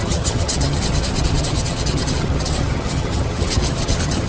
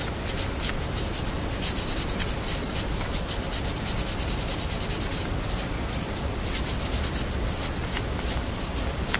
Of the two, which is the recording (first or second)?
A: second